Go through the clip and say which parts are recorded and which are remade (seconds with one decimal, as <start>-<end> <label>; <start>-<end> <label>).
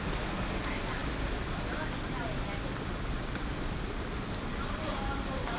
0.0-5.6 recorded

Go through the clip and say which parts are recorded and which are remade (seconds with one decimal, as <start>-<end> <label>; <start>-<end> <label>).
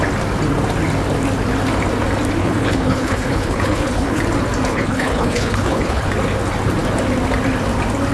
0.0-2.4 recorded; 2.4-4.2 remade; 4.2-4.7 recorded; 4.7-6.1 remade; 6.1-8.1 recorded